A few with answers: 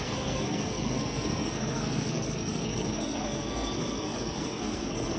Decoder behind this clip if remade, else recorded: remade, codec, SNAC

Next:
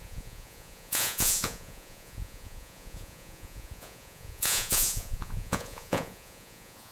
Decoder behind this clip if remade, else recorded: remade, vocoder, Vocos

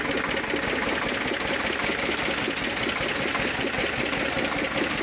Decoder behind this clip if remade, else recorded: recorded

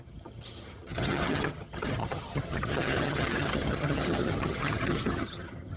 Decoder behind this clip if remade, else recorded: remade, vocoder, HiFi-GAN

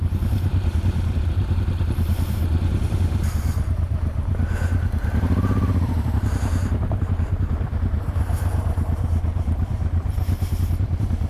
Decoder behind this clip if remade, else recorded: remade, vocoder, BigVGAN v2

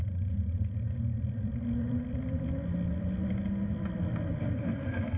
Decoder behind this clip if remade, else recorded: recorded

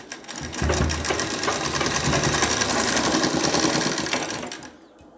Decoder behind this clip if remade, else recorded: recorded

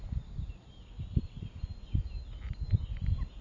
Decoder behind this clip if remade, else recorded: recorded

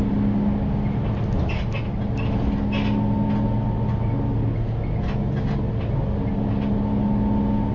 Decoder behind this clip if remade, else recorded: recorded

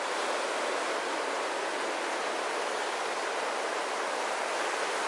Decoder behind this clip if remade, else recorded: recorded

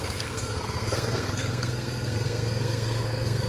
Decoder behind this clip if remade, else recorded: remade, codec, SNAC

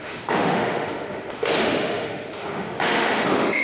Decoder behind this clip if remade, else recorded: remade, autoencoder, DAC-VAE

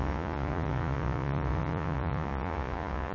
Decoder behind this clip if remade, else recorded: remade, vocoder, Vocos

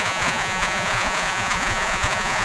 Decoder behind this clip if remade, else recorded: remade, vocoder, Vocos